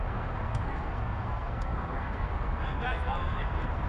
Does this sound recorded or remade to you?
remade